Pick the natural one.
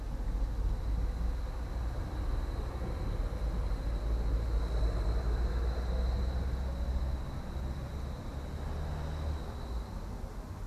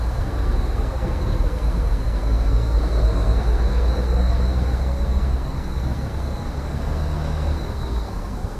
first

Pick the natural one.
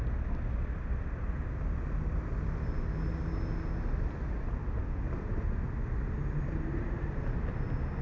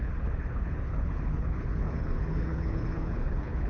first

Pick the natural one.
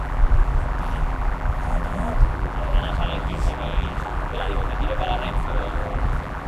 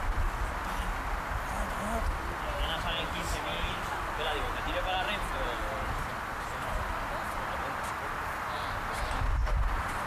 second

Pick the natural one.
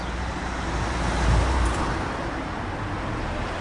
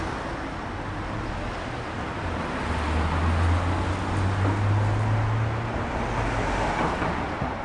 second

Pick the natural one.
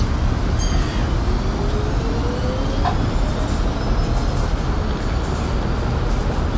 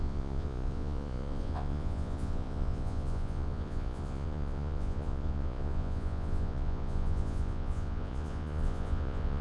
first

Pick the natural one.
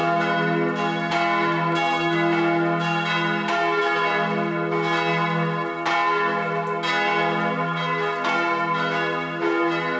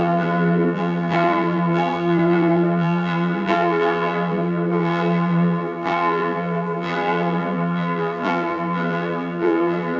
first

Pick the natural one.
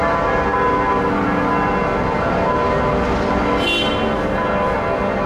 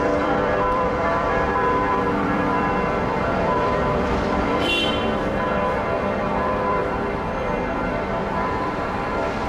first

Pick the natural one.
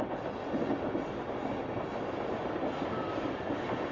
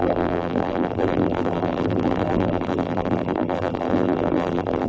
first